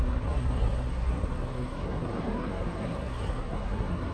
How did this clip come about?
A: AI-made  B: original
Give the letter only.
A